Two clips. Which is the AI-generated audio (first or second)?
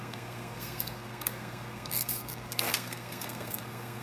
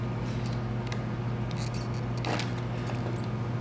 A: first